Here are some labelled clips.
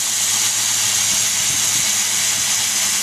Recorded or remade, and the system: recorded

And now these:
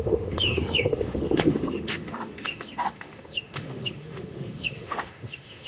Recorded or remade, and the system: remade, autoencoder, DAC-VAE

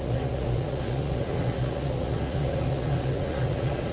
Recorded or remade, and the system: remade, vocoder, Vocos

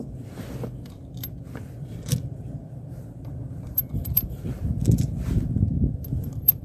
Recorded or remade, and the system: remade, vocoder, BigVGAN v2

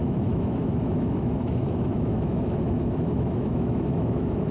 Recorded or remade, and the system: remade, autoencoder, DAC-VAE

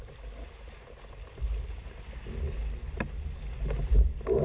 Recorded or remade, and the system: recorded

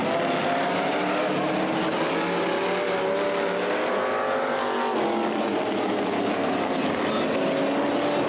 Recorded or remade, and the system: recorded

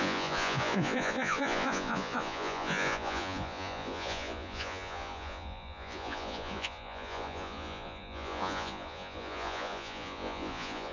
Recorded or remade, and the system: remade, vocoder, Vocos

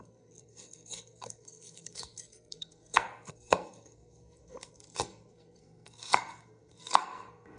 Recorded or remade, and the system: remade, codec, SNAC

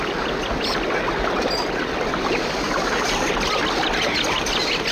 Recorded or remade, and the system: recorded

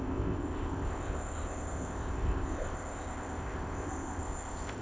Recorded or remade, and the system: remade, codec, ZipCodec